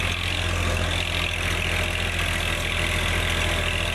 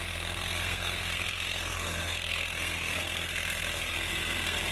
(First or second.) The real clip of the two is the first